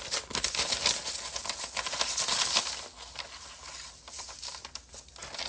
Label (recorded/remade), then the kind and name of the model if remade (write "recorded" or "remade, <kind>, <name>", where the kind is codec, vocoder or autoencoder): recorded